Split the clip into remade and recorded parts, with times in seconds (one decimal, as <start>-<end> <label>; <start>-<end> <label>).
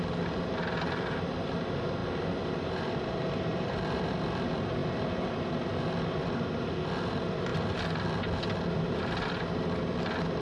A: 0.0-7.5 remade; 7.5-8.7 recorded; 8.7-10.4 remade